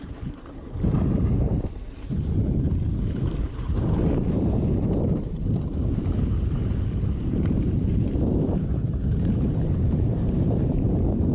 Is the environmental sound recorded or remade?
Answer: remade